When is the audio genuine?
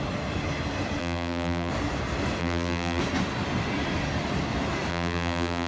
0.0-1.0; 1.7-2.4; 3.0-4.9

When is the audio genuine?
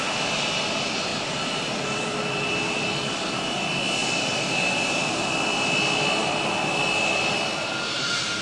0.0-1.1; 3.3-8.4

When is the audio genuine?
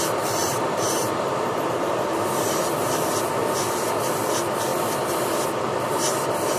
0.0-0.4; 2.6-6.6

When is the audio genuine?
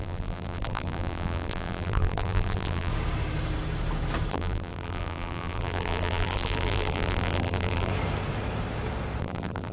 2.9-4.3; 7.9-9.2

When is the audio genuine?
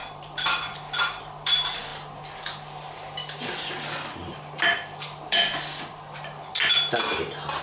0.6-7.6